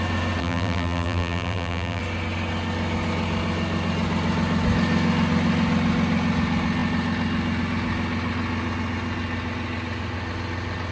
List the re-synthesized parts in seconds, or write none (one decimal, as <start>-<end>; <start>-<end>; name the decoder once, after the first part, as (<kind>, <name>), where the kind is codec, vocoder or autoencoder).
0.4-2.0 (vocoder, BigVGAN v2)